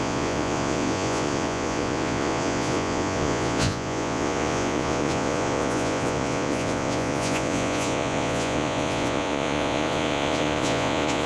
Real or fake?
fake